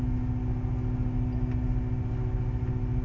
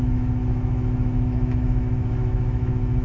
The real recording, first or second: first